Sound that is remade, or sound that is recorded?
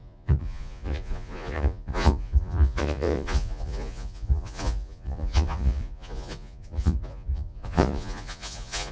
remade